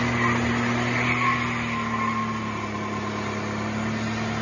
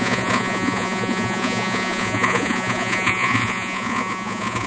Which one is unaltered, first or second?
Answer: first